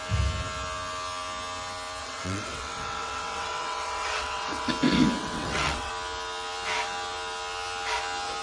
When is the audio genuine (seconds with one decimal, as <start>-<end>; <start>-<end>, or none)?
0.0-2.0; 4.7-5.2; 5.9-8.4